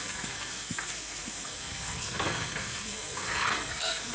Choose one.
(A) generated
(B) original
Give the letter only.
A